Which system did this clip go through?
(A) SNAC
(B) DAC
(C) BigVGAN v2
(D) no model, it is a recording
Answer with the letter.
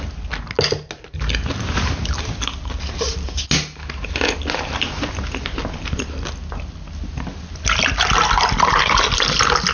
D